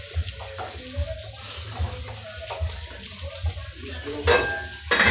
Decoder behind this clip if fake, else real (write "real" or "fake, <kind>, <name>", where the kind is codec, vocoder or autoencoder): real